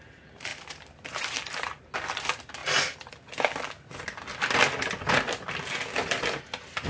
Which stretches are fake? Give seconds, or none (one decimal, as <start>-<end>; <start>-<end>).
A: 0.5-1.8